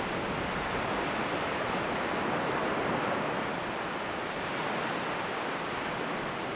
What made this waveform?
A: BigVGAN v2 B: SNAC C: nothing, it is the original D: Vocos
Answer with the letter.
C